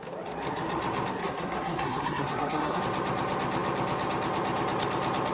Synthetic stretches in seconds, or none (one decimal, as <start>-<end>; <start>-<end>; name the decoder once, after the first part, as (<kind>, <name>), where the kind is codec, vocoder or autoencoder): 1.2-2.8 (codec, SNAC)